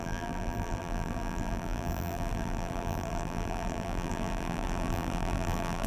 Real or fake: fake